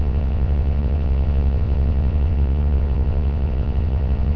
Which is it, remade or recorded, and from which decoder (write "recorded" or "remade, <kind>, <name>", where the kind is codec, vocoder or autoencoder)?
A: remade, vocoder, WaveNeXt